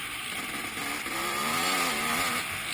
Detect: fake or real real